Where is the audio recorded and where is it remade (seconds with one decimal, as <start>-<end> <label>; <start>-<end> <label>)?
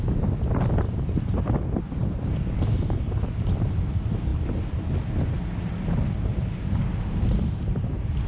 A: 0.0-8.3 recorded